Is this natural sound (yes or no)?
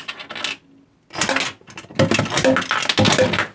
yes